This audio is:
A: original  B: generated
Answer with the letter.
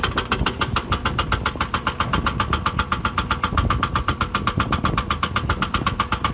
A